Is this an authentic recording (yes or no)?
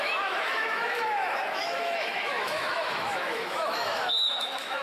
no